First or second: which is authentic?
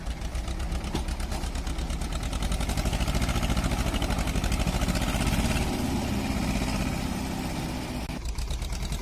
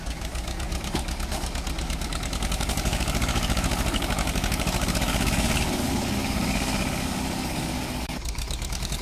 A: first